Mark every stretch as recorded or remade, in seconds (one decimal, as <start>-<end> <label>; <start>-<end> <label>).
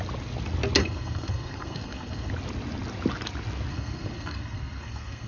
0.0-0.8 recorded; 0.8-2.3 remade; 2.3-3.7 recorded; 3.7-5.3 remade